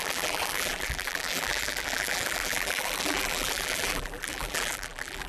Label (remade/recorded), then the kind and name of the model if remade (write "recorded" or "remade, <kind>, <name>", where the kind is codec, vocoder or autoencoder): remade, vocoder, BigVGAN v2